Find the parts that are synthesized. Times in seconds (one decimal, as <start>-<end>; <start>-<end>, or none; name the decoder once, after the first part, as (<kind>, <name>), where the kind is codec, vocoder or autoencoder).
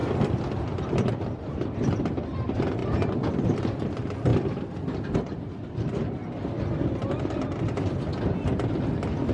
0.0-2.1 (vocoder, BigVGAN v2); 2.8-3.6; 4.3-6.9